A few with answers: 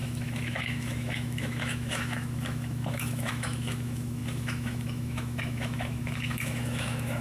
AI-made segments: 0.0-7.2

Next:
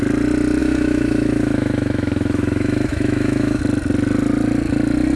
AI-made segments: 0.6-3.6

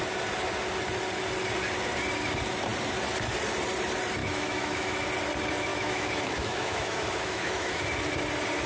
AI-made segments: 4.2-5.0; 5.7-7.8

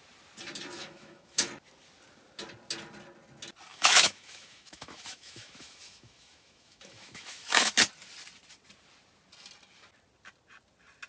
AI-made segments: 0.8-1.5; 3.7-7.7

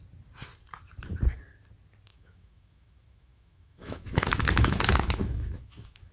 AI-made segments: 2.1-6.1

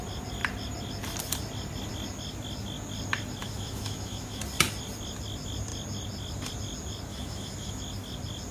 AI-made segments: 3.4-4.4; 7.1-7.8

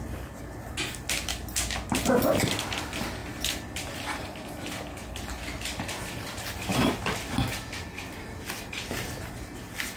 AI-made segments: none